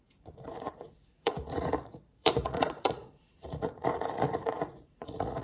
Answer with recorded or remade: remade